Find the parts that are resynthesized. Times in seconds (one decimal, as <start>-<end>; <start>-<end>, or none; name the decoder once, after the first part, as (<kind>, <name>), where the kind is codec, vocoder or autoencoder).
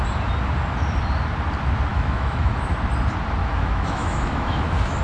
1.9-2.6 (autoencoder, DAC-VAE); 3.4-5.0